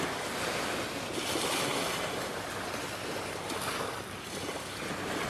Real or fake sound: real